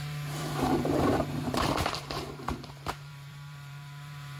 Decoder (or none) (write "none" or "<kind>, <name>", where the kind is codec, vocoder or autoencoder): vocoder, BigVGAN v2